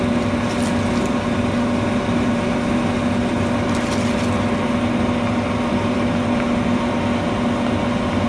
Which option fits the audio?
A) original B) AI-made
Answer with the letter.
A